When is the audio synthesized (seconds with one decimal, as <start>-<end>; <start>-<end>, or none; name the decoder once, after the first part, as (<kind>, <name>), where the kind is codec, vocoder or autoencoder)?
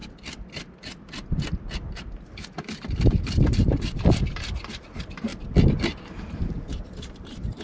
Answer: 2.4-5.3 (vocoder, BigVGAN v2); 6.1-7.6